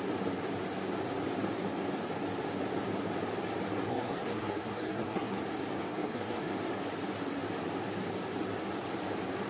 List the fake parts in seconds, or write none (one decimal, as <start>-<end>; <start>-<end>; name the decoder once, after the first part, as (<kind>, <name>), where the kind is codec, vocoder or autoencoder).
3.9-5.4 (codec, SNAC); 5.9-6.5